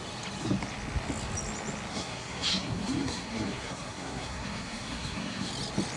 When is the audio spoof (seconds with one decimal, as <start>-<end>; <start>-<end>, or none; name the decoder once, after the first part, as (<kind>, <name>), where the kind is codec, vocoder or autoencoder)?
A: 1.9-5.5 (codec, SNAC)